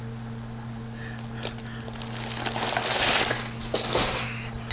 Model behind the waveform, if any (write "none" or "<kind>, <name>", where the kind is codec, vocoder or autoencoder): none